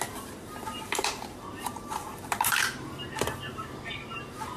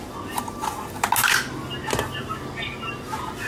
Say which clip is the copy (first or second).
first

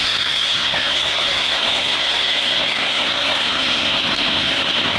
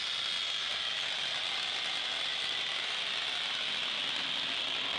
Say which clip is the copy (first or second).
first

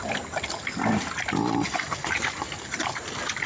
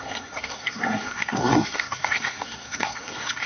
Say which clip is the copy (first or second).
second